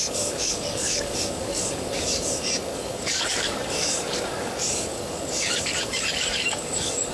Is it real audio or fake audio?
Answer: fake